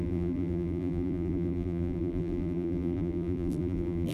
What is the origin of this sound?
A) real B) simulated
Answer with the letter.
B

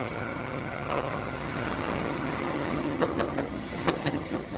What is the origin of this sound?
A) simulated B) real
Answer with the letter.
A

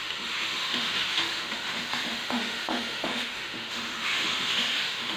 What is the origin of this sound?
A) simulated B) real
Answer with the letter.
A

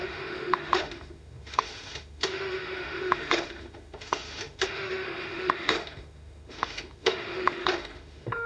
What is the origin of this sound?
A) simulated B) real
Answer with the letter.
A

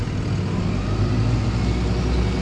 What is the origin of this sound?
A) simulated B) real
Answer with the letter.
B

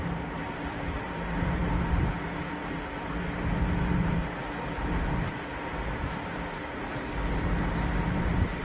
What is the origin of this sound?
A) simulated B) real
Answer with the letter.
A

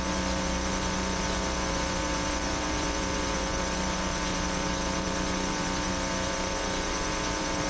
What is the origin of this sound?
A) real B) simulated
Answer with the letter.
B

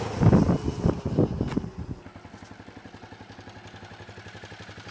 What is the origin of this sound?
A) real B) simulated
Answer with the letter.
A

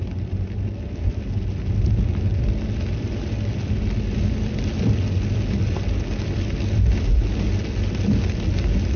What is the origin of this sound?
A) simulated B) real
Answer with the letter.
B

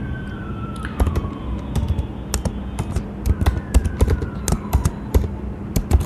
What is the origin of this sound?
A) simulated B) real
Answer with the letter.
B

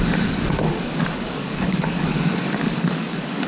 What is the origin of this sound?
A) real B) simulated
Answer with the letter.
B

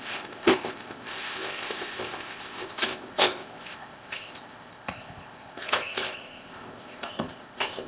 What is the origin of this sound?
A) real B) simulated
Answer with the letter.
B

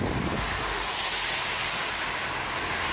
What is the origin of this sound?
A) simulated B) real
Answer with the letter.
B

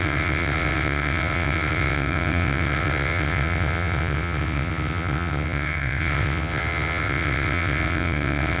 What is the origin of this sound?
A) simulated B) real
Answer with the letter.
A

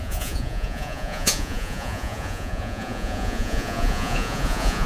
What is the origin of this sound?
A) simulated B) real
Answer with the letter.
A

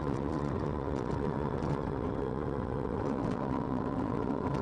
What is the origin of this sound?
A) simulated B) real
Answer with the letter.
A